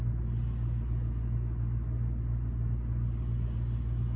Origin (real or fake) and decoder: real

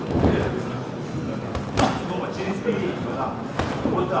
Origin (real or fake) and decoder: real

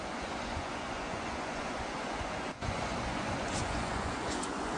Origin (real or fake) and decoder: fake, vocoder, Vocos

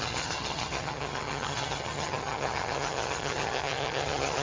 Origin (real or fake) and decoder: fake, vocoder, HiFi-GAN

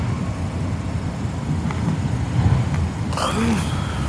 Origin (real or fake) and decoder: real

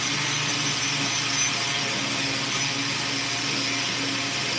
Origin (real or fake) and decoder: real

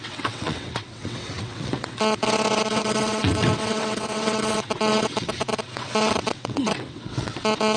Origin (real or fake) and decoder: fake, vocoder, WaveNeXt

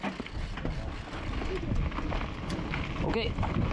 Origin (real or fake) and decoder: real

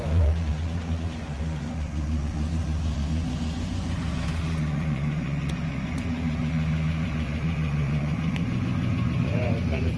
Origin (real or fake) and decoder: fake, vocoder, Vocos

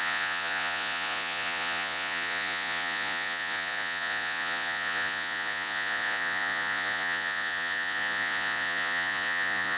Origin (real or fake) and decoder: fake, vocoder, Vocos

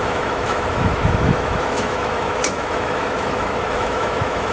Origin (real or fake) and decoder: fake, autoencoder, DAC-VAE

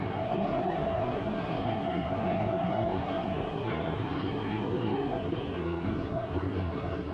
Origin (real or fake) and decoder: fake, codec, SNAC